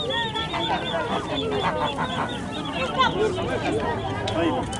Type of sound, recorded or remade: recorded